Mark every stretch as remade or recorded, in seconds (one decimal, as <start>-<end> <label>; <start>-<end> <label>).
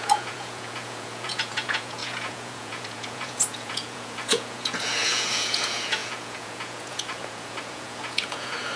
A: 0.0-8.8 remade